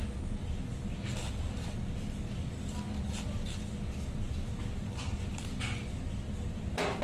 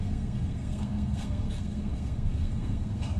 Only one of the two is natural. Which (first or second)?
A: first